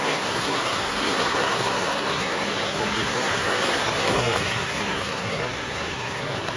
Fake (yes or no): yes